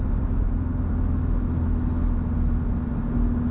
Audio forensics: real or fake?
real